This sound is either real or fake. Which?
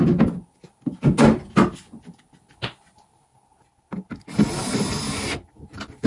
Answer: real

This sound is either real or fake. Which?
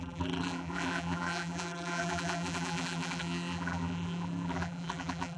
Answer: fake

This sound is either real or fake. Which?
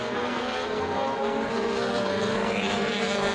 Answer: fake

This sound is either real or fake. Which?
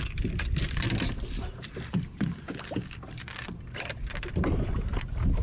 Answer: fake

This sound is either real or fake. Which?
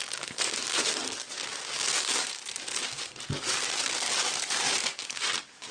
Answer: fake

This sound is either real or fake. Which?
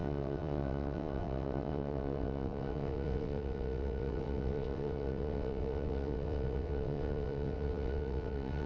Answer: fake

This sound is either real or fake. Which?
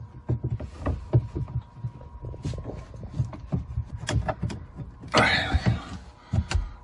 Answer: real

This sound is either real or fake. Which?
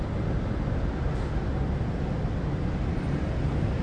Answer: real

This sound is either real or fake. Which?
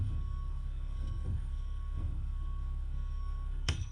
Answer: fake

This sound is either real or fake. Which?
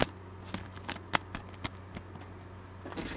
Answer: real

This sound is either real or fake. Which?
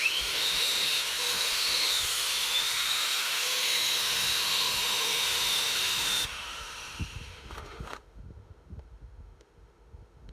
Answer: fake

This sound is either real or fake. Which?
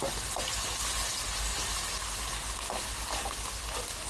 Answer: real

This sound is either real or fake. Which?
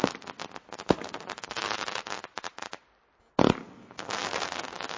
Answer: real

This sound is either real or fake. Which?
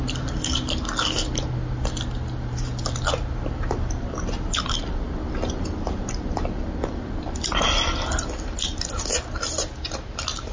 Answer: real